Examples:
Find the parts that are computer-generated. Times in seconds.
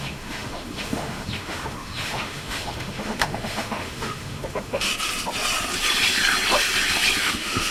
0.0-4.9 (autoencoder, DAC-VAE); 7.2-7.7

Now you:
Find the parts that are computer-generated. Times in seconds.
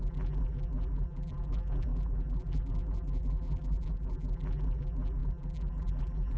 0.0-6.4 (vocoder, BigVGAN v2)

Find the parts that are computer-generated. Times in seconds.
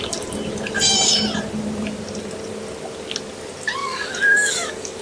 3.8-5.0 (codec, DAC)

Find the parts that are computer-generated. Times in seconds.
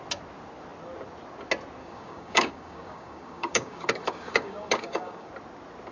1.8-5.3 (codec, DAC)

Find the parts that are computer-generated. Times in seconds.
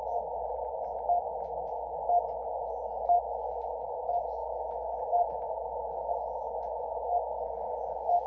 none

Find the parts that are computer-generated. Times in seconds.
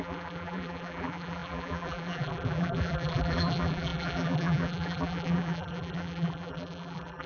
0.0-7.3 (vocoder, BigVGAN v2)